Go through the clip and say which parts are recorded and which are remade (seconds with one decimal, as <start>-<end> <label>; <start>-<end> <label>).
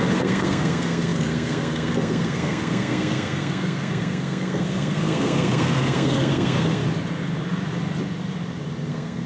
0.0-6.8 remade; 6.8-8.9 recorded; 8.9-9.3 remade